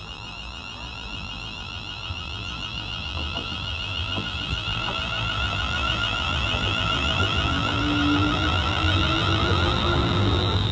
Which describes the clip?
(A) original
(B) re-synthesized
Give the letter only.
B